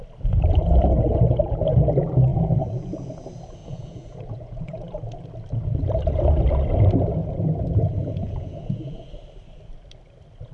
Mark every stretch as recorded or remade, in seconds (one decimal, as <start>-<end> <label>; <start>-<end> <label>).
0.0-2.3 recorded; 2.3-3.1 remade; 3.1-3.6 recorded; 3.6-5.0 remade; 5.0-7.2 recorded; 7.2-9.1 remade; 9.1-10.5 recorded